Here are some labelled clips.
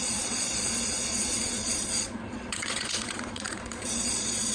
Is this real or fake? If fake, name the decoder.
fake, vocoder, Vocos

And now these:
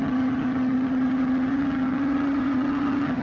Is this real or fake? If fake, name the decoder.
fake, vocoder, HiFi-GAN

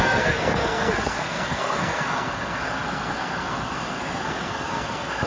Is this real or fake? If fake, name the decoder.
fake, codec, SNAC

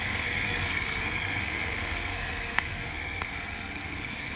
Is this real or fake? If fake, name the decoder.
fake, codec, SNAC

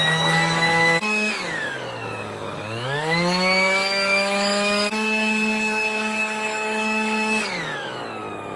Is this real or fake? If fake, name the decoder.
fake, codec, DAC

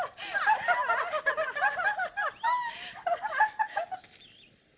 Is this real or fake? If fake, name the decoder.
real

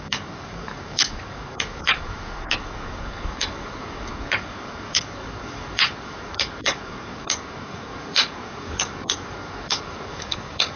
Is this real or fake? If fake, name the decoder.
fake, codec, DAC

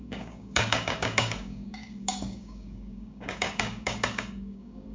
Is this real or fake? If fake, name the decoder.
fake, codec, DAC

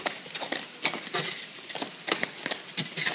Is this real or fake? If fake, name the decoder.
real